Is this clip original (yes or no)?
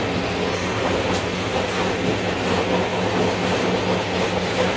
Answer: yes